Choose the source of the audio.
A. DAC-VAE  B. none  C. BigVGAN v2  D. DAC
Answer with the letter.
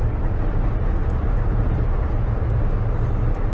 B